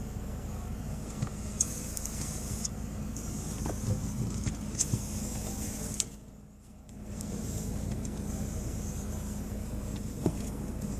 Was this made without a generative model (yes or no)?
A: no